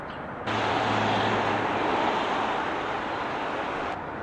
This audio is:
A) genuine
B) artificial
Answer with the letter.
A